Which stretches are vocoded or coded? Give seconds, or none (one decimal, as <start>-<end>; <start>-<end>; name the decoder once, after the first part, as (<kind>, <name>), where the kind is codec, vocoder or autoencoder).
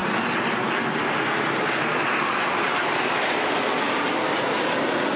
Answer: none